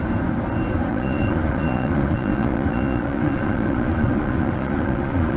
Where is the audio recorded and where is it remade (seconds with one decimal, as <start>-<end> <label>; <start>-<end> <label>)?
0.0-0.9 recorded; 0.9-5.4 remade